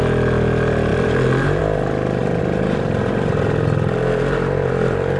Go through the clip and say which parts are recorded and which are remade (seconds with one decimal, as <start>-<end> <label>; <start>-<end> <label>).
0.0-0.9 recorded; 0.9-1.6 remade; 1.6-2.2 recorded; 2.2-5.2 remade